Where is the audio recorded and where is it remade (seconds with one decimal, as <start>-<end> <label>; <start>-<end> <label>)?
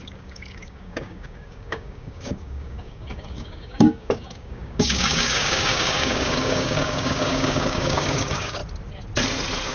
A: 0.0-8.6 remade; 8.6-9.7 recorded